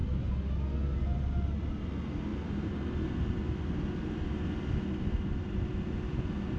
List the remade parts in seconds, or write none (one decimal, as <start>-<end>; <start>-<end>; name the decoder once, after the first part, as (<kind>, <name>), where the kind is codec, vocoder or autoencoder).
none